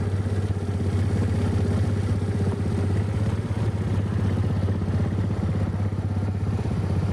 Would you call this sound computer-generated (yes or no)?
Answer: no